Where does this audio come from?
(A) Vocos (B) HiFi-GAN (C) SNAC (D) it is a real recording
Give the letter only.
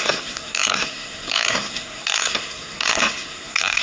C